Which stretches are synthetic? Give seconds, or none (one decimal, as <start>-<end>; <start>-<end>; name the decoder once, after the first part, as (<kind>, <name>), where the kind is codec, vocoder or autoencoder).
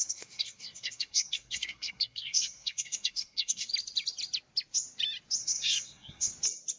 0.0-3.7 (codec, SNAC); 5.4-6.3